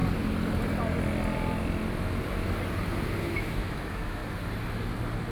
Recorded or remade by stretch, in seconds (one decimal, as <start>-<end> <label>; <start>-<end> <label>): 0.0-3.2 recorded; 3.2-4.2 remade; 4.2-5.3 recorded